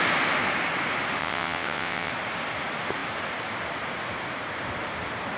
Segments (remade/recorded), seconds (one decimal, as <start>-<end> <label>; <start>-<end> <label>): 0.0-1.2 recorded; 1.2-2.1 remade; 2.1-5.4 recorded

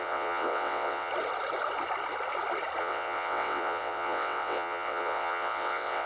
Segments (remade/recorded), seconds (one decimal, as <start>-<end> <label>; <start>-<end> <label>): 0.0-1.1 remade; 1.1-2.8 recorded; 2.8-6.1 remade

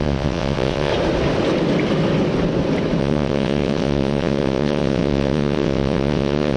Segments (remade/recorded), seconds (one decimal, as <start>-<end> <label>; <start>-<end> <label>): 0.0-0.9 remade; 0.9-3.0 recorded; 3.0-6.6 remade

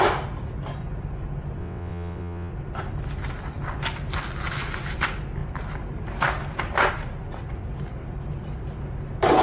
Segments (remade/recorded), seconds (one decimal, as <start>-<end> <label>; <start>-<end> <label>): 0.0-1.6 recorded; 1.6-2.5 remade; 2.5-9.4 recorded

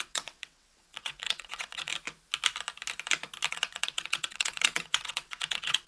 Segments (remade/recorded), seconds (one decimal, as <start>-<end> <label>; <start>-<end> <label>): 0.0-1.9 remade; 1.9-3.5 recorded; 3.5-5.9 remade